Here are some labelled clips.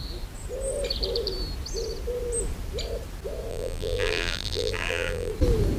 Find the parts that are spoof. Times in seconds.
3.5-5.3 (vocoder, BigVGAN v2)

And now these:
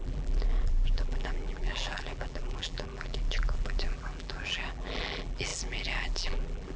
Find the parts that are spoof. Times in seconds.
0.0-6.8 (vocoder, BigVGAN v2)

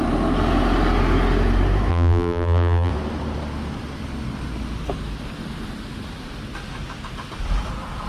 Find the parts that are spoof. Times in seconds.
1.9-2.9 (vocoder, BigVGAN v2)

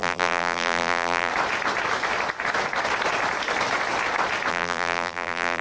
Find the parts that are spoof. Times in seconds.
0.0-1.3 (vocoder, BigVGAN v2); 4.5-5.6

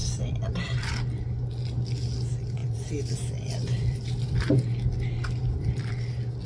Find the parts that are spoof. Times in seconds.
0.0-0.9 (vocoder, BigVGAN v2); 2.6-5.9

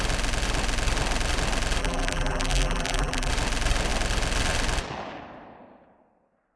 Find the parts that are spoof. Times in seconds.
1.8-3.3 (vocoder, BigVGAN v2)

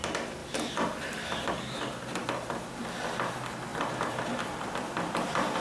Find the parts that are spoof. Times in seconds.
0.4-1.5 (vocoder, BigVGAN v2); 2.2-2.8; 3.7-5.6